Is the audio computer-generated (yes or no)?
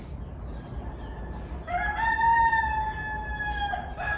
no